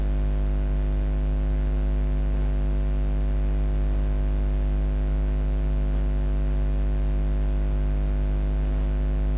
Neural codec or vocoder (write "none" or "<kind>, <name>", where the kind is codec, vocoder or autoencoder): none